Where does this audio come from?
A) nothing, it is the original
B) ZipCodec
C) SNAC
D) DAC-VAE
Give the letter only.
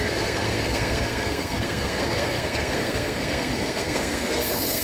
C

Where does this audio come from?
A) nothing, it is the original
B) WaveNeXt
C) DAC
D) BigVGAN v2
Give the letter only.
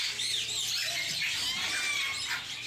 A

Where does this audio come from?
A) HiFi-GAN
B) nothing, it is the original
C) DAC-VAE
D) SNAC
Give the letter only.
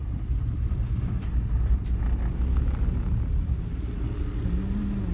B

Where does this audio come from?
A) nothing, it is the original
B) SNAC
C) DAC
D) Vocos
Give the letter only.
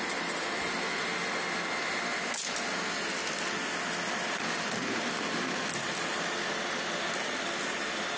A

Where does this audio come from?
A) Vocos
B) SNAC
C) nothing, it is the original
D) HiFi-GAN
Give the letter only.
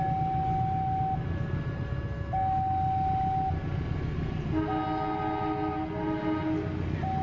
C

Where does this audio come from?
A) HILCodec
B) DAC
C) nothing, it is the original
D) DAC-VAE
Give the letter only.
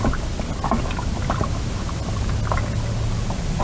C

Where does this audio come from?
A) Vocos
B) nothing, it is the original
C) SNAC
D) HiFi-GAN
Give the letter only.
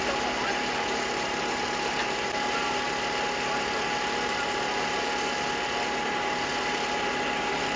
B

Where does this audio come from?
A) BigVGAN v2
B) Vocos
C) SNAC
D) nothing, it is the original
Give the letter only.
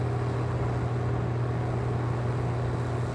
D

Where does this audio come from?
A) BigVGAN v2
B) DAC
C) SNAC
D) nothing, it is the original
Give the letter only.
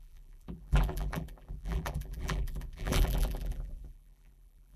A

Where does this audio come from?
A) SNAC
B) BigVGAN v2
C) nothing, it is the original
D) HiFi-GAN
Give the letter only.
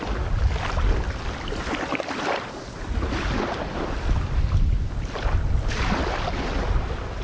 C